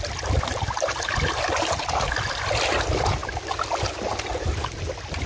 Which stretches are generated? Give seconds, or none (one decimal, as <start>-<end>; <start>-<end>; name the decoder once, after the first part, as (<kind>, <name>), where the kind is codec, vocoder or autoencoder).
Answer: none